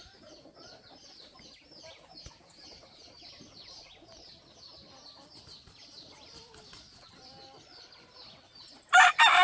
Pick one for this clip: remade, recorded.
recorded